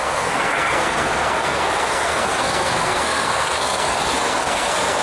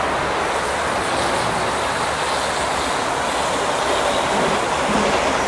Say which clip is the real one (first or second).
second